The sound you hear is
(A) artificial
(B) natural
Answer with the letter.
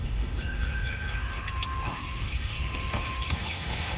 A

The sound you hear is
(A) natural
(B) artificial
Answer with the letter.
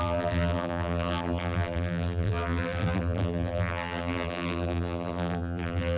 B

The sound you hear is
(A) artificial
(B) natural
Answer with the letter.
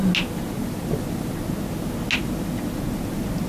B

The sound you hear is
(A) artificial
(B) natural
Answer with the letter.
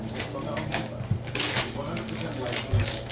B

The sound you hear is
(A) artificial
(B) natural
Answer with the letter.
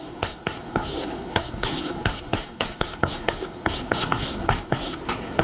A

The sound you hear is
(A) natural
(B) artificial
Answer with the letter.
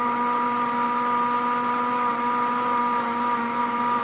A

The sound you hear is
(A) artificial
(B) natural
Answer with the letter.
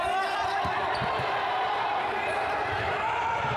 B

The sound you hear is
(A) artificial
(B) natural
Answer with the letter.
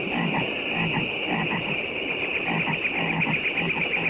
B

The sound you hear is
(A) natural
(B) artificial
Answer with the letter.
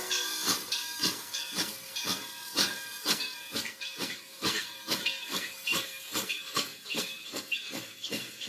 B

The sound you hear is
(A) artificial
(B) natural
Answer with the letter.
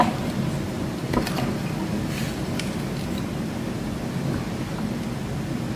B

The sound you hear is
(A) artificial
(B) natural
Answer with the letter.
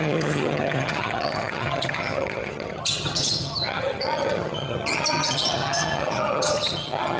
A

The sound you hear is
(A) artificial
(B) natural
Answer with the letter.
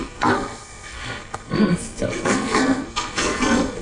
A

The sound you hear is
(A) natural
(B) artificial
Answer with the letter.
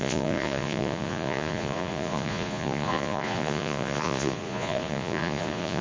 B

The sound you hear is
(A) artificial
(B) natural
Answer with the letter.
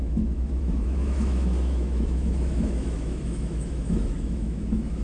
A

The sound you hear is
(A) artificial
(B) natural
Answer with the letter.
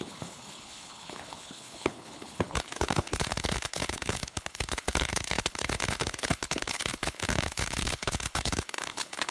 A